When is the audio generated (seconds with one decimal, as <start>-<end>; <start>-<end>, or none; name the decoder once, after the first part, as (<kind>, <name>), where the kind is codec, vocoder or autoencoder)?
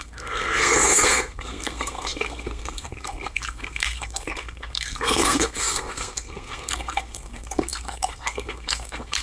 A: 0.0-9.2 (codec, SNAC)